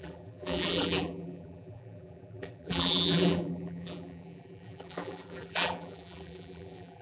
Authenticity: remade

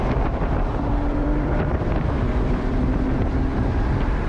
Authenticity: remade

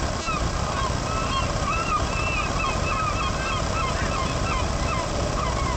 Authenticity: recorded